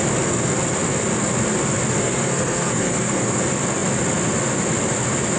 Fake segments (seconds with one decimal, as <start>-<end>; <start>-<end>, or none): 2.0-3.4